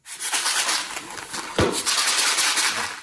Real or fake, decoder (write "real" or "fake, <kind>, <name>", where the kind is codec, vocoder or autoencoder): real